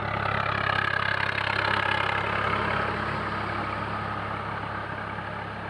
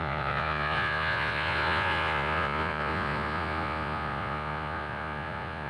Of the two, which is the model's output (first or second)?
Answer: second